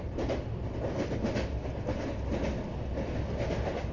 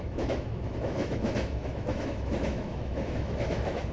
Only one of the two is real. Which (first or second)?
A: first